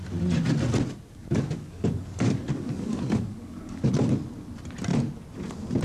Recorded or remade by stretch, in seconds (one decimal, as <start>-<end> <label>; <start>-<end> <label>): 0.0-1.2 recorded; 1.2-3.9 remade; 3.9-5.8 recorded